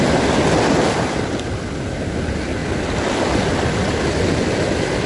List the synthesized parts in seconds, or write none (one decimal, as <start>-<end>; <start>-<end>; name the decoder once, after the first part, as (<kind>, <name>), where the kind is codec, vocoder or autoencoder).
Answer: none